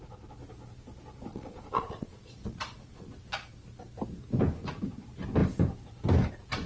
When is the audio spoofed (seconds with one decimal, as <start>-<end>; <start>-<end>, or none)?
1.3-3.1